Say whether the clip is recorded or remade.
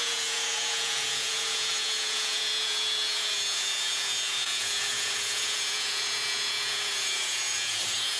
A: remade